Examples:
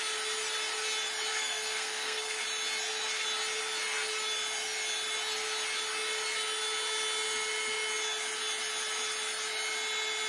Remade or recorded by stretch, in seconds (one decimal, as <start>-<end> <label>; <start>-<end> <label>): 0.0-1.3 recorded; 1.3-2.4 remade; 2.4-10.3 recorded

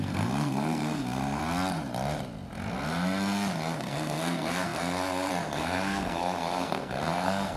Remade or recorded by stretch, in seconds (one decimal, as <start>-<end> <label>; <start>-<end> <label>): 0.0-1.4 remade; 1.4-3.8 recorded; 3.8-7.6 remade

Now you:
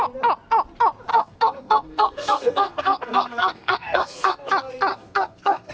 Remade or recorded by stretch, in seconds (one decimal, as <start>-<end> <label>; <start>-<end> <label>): 0.0-1.1 recorded; 1.1-4.5 remade; 4.5-4.9 recorded; 4.9-5.7 remade

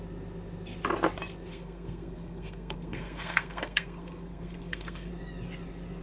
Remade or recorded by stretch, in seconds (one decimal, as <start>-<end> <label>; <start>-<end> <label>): 0.0-1.5 recorded; 1.5-5.1 remade; 5.1-6.0 recorded

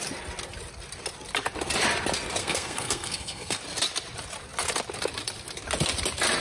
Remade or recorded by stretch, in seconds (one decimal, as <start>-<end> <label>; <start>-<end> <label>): 0.0-2.4 recorded; 2.4-3.6 remade; 3.6-6.4 recorded

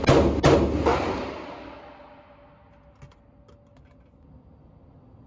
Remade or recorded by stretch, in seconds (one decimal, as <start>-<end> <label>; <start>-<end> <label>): 0.0-5.3 recorded

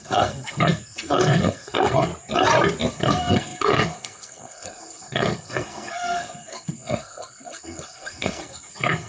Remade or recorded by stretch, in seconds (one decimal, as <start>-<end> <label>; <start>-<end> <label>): 0.0-2.1 remade; 2.1-2.9 recorded; 2.9-9.1 remade

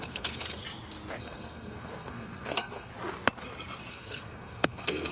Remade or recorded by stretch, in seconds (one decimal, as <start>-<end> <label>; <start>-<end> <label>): 0.0-0.6 remade; 0.6-1.2 recorded; 1.2-2.9 remade; 2.9-3.9 recorded; 3.9-5.1 remade